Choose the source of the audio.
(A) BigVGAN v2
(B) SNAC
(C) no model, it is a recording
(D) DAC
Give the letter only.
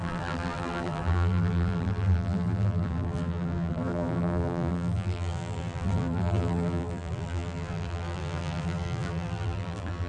A